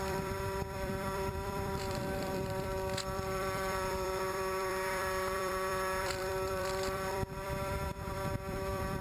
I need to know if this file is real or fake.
fake